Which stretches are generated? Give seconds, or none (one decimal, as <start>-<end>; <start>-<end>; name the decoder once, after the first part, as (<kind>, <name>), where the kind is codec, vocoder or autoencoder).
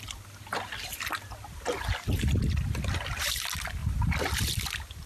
3.8-4.6 (vocoder, BigVGAN v2)